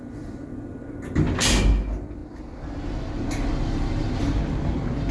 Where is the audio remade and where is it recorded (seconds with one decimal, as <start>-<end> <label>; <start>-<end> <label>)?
0.0-5.1 recorded